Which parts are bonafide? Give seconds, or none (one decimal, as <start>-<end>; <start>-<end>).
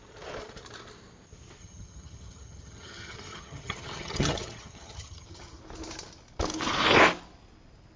0.0-1.6; 5.6-8.0